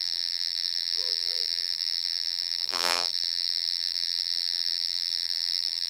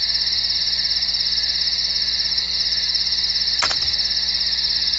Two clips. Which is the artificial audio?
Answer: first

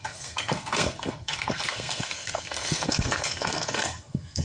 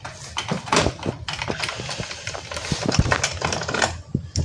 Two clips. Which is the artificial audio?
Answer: first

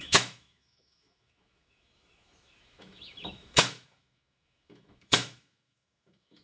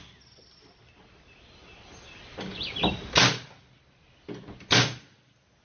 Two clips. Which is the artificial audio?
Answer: first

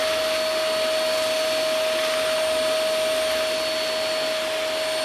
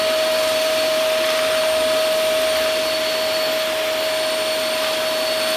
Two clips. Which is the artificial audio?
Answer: second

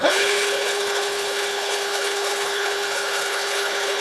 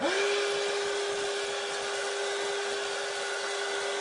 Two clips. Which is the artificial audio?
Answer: first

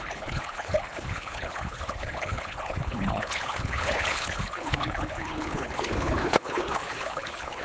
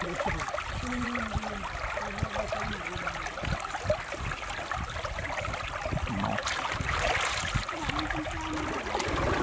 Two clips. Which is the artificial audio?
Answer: first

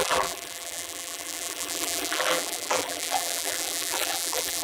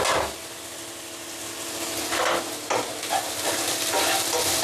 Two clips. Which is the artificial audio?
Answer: first